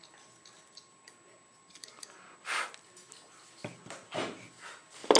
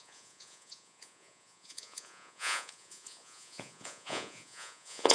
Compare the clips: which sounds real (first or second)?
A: first